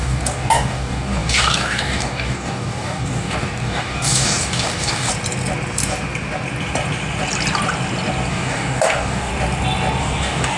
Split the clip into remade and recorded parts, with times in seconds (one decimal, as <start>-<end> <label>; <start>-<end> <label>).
0.0-5.1 remade; 5.1-8.3 recorded; 8.3-9.3 remade; 9.3-10.0 recorded; 10.0-10.6 remade

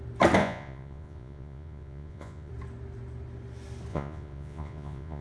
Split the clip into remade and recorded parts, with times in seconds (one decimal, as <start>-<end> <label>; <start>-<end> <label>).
0.0-0.4 recorded; 0.4-2.5 remade; 2.5-3.9 recorded; 3.9-5.2 remade

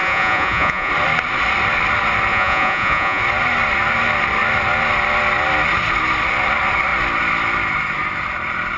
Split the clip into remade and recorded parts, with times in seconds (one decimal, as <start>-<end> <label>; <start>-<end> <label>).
0.0-0.9 remade; 0.9-2.3 recorded; 2.3-3.2 remade; 3.2-8.8 recorded

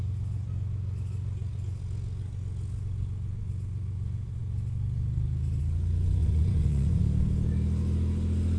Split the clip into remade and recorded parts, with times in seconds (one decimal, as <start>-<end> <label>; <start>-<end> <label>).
0.0-6.2 recorded; 6.2-7.0 remade; 7.0-8.6 recorded

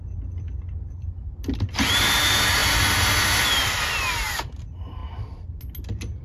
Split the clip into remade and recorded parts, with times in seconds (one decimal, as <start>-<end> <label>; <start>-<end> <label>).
0.0-2.6 recorded; 2.6-3.1 remade; 3.1-6.2 recorded

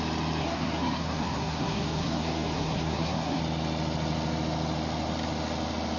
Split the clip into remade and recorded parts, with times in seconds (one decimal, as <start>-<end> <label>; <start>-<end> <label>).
0.0-0.4 recorded; 0.4-3.4 remade; 3.4-6.0 recorded

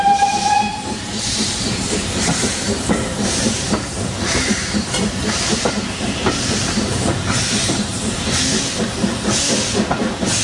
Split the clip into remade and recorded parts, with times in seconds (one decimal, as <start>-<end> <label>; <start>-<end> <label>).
0.0-7.9 remade; 7.9-10.4 recorded

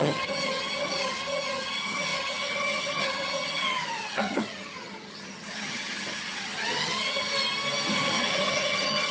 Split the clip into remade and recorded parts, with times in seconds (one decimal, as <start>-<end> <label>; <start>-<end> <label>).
0.0-7.3 remade; 7.3-7.9 recorded; 7.9-9.1 remade